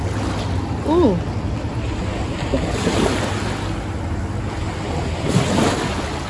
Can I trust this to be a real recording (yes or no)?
yes